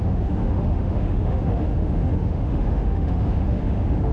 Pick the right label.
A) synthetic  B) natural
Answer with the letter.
A